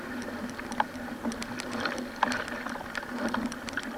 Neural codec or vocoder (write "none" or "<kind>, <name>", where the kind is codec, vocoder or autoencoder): none